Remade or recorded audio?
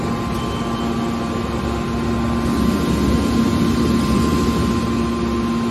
recorded